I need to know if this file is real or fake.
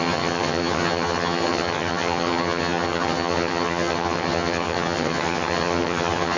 fake